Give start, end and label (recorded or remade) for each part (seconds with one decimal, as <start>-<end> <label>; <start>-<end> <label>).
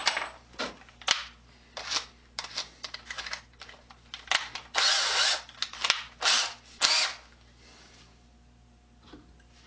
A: 0.0-9.7 recorded